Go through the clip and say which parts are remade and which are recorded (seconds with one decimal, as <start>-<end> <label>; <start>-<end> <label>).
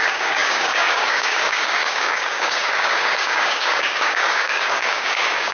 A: 0.0-5.5 remade